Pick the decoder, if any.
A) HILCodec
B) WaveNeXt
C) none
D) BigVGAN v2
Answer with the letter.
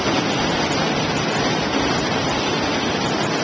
C